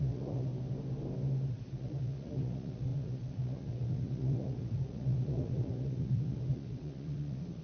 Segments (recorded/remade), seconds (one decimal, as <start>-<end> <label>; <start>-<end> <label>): 0.0-0.5 remade; 0.5-1.5 recorded; 1.5-7.6 remade